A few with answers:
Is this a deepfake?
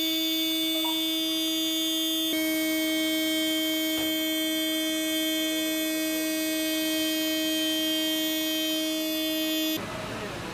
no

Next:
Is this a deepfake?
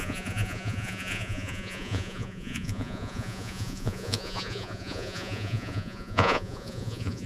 yes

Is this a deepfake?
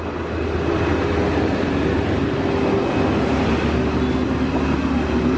no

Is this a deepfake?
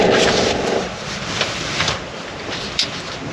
yes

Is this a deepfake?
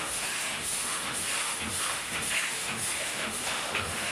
yes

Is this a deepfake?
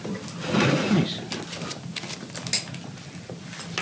no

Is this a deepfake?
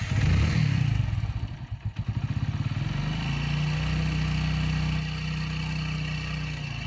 no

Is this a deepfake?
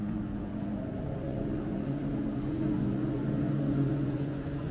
yes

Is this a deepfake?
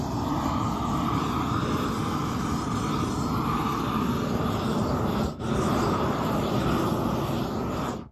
no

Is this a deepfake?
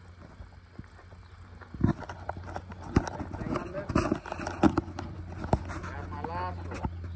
no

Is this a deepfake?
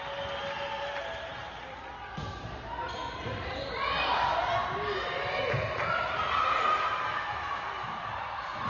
no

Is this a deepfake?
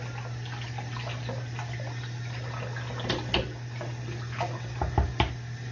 no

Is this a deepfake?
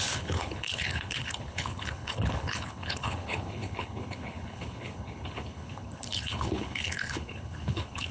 yes